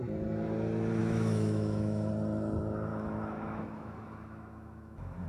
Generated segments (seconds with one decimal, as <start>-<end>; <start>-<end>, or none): 1.0-2.1; 2.9-5.3